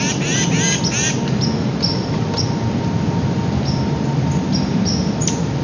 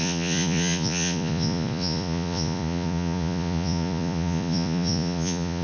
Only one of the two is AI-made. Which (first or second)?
second